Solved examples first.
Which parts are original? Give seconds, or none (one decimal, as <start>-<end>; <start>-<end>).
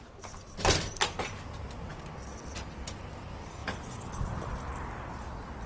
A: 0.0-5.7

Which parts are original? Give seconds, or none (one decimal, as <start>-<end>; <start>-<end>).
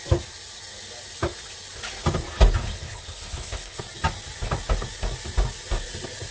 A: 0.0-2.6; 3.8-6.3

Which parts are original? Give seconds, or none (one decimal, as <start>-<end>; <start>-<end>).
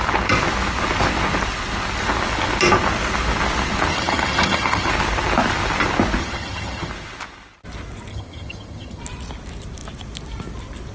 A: 0.0-3.9; 4.9-6.2; 6.9-8.1; 9.0-10.9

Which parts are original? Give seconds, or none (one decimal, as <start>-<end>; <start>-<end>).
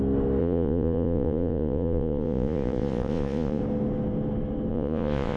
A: 0.0-0.4; 3.6-4.7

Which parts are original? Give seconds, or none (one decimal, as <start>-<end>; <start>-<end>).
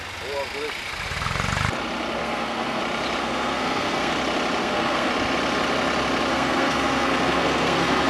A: 0.0-2.2; 2.8-3.2; 4.1-4.6; 5.1-6.3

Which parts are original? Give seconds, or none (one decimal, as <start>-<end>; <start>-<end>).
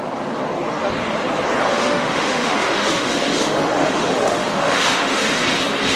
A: 0.0-1.7; 5.3-6.0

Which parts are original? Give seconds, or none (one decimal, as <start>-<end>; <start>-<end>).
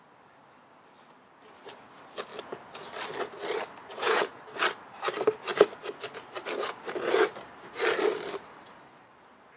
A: 0.0-3.8; 4.4-9.6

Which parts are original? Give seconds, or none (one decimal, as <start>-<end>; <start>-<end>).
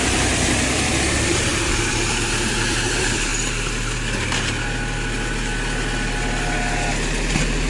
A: 3.3-7.3